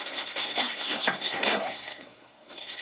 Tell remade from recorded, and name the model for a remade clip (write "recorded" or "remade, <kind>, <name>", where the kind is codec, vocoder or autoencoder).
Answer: remade, codec, SNAC